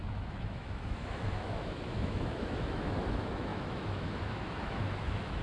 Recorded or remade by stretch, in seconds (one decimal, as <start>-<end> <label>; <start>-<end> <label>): 0.0-5.4 remade